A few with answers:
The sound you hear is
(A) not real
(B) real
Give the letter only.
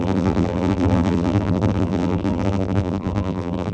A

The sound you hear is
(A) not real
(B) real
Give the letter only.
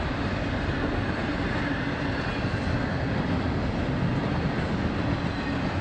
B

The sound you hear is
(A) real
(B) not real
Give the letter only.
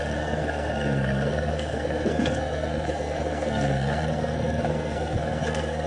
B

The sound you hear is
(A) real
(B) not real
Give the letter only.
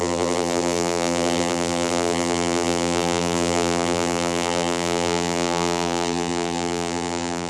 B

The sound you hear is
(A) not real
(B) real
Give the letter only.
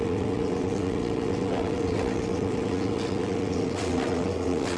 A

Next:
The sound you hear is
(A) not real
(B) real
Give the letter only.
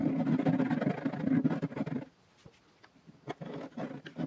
B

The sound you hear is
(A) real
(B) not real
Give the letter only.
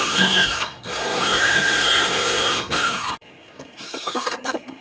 B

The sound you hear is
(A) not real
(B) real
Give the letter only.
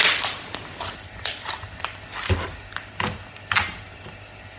B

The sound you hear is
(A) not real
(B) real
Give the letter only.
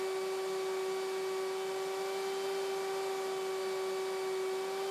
B